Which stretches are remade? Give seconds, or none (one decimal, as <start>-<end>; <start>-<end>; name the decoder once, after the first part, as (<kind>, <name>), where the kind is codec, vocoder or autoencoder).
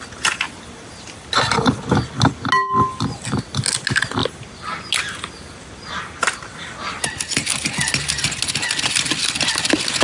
none